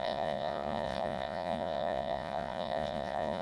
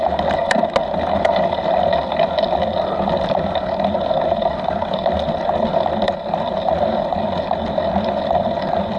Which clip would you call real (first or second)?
second